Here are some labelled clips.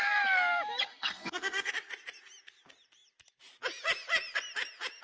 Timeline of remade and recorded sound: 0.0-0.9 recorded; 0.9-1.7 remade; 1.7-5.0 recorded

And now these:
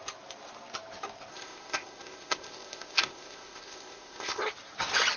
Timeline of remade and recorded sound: 0.0-1.3 recorded; 1.3-4.4 remade; 4.4-5.2 recorded

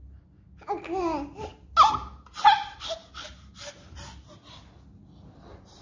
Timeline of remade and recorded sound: 0.0-5.8 recorded

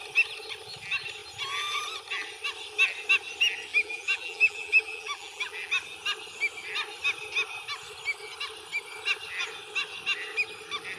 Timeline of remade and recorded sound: 0.0-3.7 recorded; 3.7-5.7 remade; 5.7-11.0 recorded

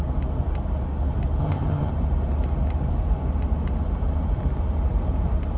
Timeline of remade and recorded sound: 0.0-1.4 recorded; 1.4-1.9 remade; 1.9-5.6 recorded